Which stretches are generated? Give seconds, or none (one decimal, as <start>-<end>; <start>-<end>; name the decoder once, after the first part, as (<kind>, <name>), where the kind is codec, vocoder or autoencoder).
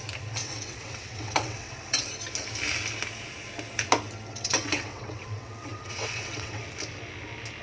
0.4-2.1 (vocoder, WaveNeXt); 4.3-6.6